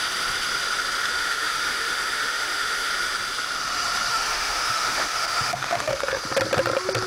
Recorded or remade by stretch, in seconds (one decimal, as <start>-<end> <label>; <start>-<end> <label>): 0.0-1.1 recorded; 1.1-2.9 remade; 2.9-4.1 recorded; 4.1-6.2 remade; 6.2-7.1 recorded